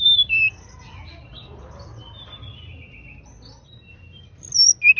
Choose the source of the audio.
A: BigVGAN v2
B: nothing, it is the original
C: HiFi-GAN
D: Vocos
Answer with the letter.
B